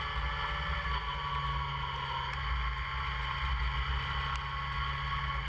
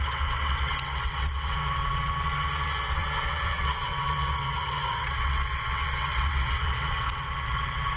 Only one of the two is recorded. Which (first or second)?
first